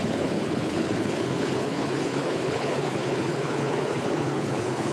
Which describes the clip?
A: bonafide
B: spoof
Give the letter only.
B